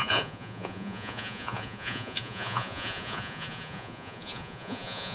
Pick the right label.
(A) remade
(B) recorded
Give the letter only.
A